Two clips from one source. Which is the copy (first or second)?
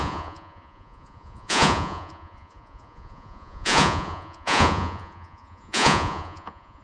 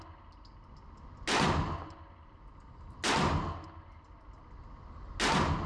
first